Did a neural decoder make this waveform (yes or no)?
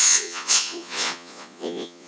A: yes